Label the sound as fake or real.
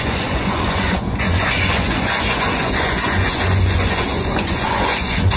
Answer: fake